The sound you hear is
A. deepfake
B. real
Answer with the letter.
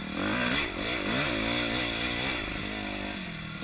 B